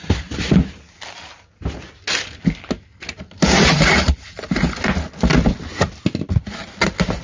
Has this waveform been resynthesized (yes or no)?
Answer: no